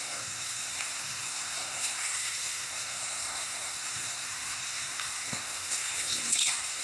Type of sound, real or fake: fake